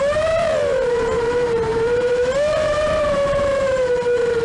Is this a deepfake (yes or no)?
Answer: yes